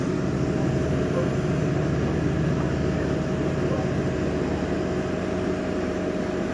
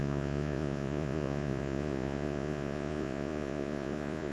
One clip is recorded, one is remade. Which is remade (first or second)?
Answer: second